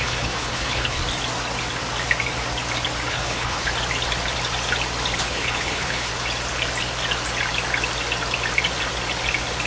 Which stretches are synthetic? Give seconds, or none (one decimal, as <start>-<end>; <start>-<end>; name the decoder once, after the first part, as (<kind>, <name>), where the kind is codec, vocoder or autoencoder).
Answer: 0.0-1.0 (codec, HILCodec); 3.1-3.7; 5.2-6.1